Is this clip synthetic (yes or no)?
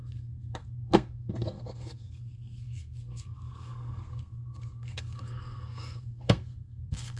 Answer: yes